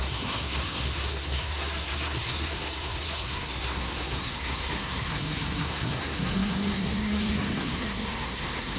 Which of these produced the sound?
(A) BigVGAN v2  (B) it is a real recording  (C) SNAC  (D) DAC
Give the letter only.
C